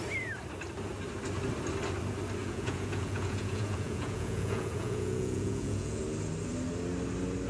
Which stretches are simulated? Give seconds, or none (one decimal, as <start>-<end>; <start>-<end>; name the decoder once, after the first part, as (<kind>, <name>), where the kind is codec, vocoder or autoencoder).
2.4-6.0 (vocoder, Vocos)